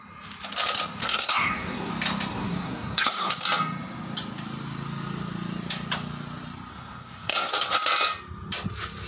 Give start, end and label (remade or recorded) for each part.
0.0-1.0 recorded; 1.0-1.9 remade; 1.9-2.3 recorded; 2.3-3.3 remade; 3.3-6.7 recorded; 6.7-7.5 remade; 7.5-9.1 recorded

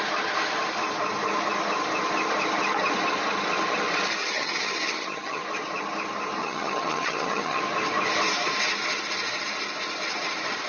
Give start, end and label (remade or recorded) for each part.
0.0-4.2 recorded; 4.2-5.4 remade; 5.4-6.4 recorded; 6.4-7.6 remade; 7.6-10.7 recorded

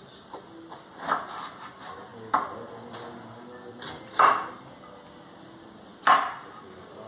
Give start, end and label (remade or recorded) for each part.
0.0-7.1 recorded

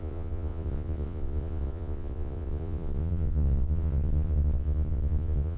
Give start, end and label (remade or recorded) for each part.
0.0-5.6 remade

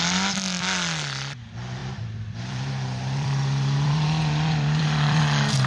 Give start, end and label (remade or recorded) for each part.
0.0-1.8 recorded; 1.8-5.2 remade; 5.2-5.7 recorded